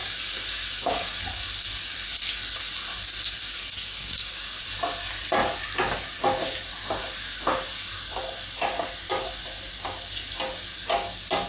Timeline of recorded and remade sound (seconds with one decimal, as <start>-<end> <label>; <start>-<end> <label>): 0.0-1.2 remade; 1.2-3.8 recorded; 3.8-4.6 remade; 4.6-11.5 recorded